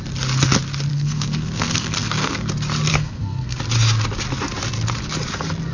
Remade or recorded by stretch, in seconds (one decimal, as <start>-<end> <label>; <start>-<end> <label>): 0.0-0.9 recorded; 0.9-2.5 remade; 2.5-2.9 recorded; 2.9-3.6 remade; 3.6-5.7 recorded